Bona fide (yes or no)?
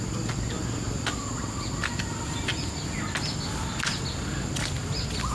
yes